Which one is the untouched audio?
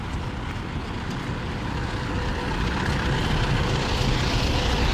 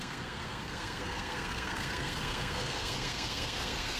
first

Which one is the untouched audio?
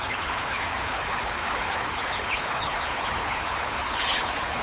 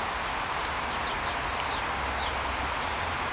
second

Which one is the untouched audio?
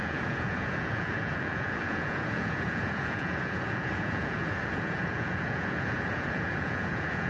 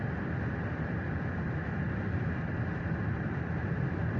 second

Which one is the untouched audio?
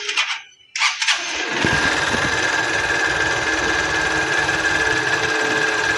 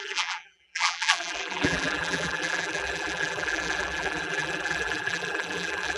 first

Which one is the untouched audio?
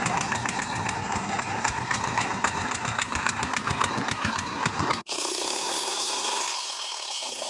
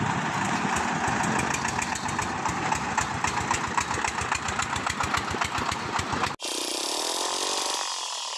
second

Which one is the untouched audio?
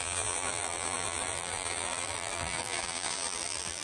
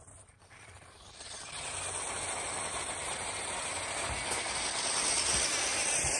second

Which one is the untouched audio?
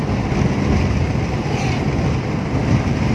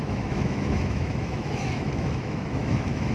first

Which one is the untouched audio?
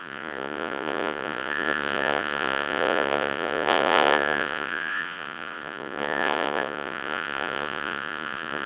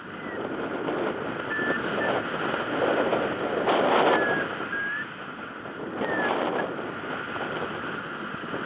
second